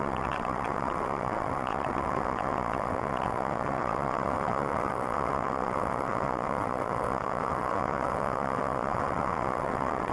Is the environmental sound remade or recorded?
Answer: remade